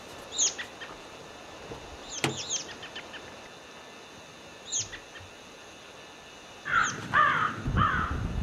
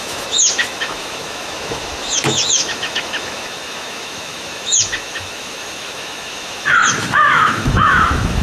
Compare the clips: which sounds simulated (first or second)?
second